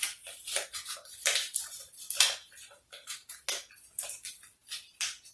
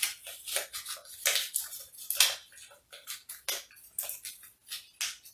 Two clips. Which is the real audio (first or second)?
second